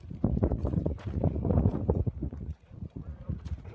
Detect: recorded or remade remade